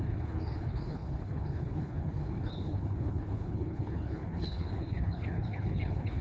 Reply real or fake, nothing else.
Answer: fake